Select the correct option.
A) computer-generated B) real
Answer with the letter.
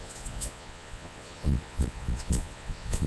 A